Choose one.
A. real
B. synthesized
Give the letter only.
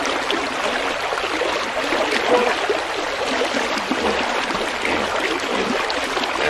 A